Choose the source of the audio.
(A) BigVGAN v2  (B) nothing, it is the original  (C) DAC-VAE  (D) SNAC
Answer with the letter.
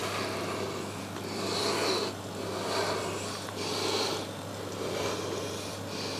B